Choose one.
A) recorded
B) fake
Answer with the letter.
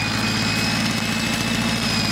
A